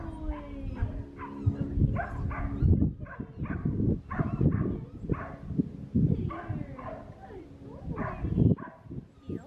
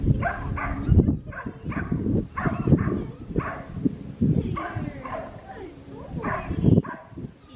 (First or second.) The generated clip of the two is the second